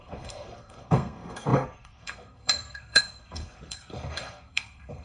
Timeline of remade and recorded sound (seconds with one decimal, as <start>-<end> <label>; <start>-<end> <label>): 0.0-5.0 remade